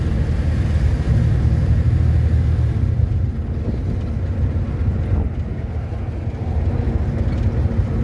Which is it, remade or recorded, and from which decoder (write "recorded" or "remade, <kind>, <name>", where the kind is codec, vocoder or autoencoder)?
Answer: recorded